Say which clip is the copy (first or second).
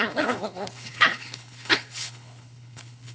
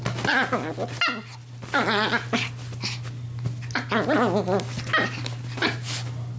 first